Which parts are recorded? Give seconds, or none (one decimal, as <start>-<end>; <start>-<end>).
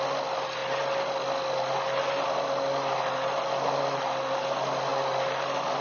0.0-5.8